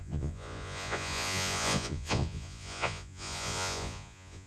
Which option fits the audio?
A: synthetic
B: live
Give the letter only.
A